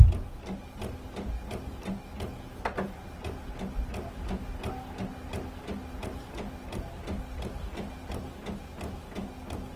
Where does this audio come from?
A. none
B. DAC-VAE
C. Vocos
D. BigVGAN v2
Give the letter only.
A